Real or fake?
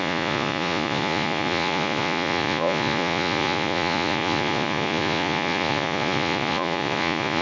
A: fake